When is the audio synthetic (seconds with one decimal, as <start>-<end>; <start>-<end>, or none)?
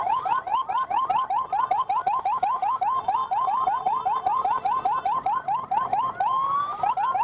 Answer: none